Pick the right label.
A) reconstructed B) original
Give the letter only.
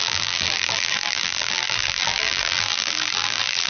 A